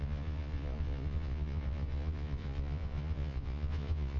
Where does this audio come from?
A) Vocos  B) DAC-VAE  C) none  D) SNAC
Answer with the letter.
A